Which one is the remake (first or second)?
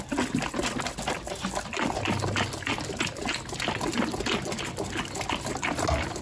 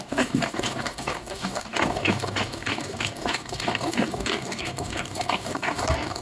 second